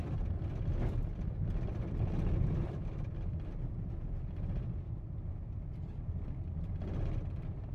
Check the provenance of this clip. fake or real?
real